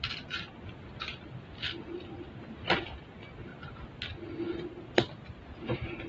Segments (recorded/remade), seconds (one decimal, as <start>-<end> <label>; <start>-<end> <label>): 0.0-1.1 recorded; 1.1-2.0 remade; 2.0-6.1 recorded